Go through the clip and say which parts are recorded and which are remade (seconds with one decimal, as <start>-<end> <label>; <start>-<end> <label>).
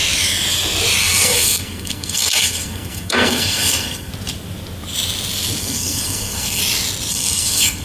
0.0-1.0 recorded; 1.0-4.1 remade; 4.1-5.6 recorded; 5.6-6.6 remade; 6.6-7.1 recorded; 7.1-7.8 remade